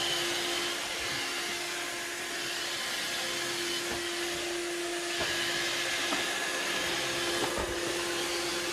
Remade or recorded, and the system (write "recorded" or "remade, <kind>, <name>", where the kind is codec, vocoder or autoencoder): recorded